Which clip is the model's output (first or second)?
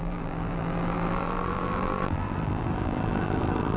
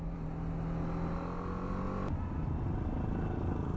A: first